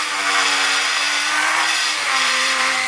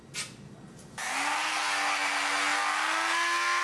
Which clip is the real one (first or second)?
second